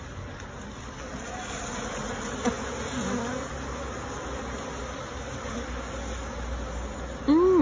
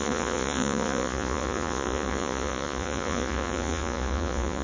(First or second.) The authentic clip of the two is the first